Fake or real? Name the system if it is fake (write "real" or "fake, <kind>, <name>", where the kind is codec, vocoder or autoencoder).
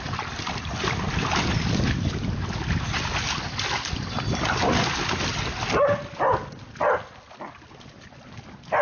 real